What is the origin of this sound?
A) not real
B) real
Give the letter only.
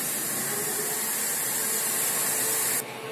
B